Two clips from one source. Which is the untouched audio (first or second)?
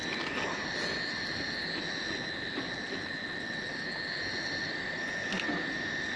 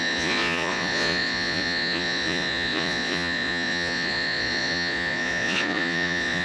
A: first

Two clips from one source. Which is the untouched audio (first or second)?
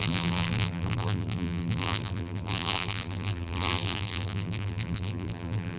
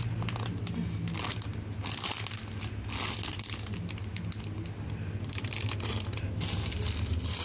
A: second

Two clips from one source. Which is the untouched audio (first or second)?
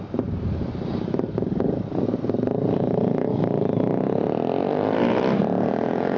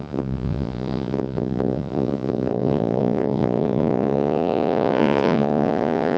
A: first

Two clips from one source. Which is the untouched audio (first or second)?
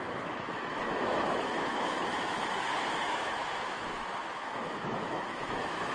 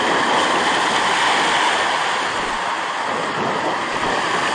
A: second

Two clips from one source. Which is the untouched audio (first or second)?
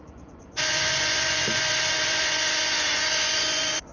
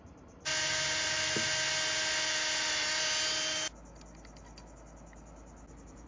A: second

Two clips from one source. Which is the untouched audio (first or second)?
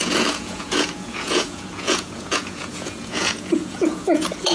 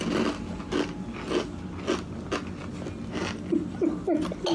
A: second